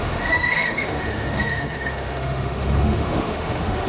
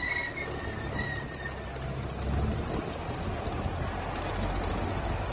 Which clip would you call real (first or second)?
second